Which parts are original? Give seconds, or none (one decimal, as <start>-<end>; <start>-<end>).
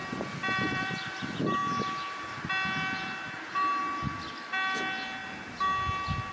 0.9-6.3